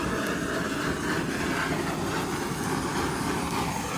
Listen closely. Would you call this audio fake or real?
real